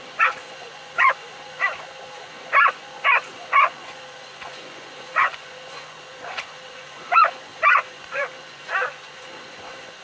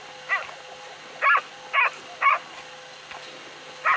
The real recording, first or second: second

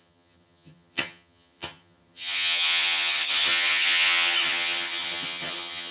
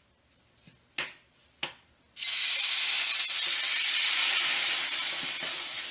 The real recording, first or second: second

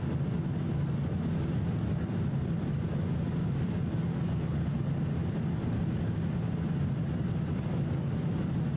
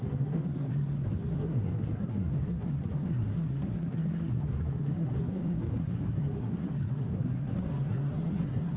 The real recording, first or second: first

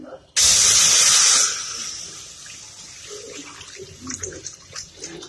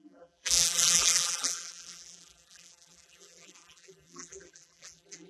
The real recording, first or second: first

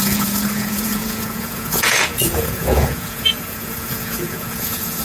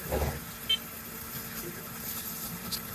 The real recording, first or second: second